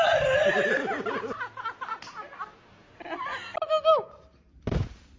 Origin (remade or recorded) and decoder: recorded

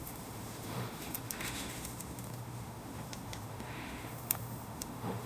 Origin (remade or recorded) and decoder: remade, autoencoder, DAC-VAE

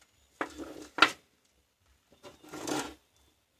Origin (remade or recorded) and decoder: recorded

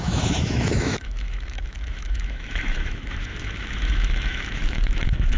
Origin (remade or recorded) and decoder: remade, autoencoder, DAC-VAE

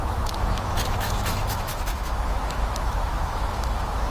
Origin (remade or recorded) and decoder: remade, autoencoder, DAC-VAE